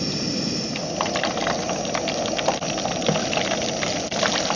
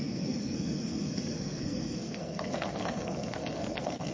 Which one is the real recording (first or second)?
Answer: first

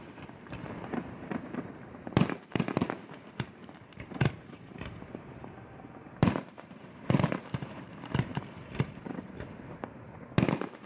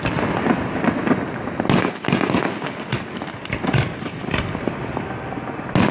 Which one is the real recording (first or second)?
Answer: second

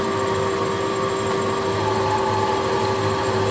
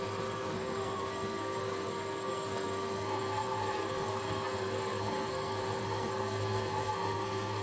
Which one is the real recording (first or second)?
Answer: first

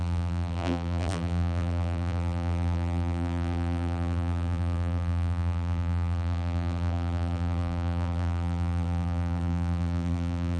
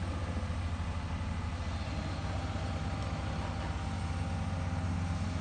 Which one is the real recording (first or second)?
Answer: second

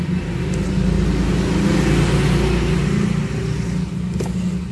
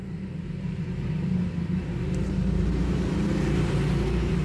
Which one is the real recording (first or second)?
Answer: first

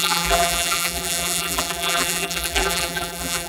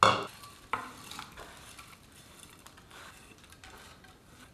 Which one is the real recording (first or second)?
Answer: second